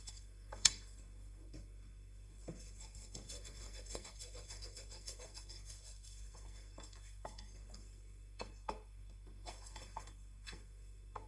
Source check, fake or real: fake